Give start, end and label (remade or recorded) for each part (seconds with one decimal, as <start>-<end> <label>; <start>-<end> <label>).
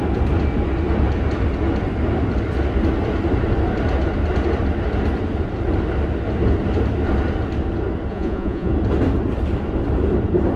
0.0-8.1 recorded; 8.1-8.7 remade; 8.7-10.6 recorded